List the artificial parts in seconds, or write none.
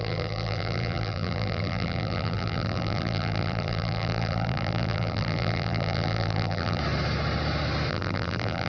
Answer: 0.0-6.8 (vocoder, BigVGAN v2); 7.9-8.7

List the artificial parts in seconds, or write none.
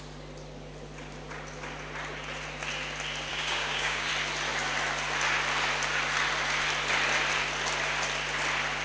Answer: 3.3-4.1 (codec, DAC)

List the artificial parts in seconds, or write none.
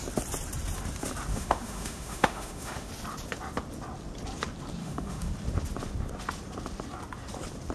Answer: 1.3-2.9 (autoencoder, DAC-VAE); 4.8-5.3